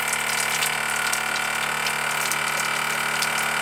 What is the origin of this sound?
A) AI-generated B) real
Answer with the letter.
B